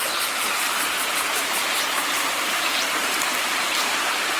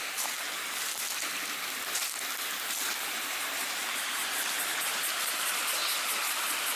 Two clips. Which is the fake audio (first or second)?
first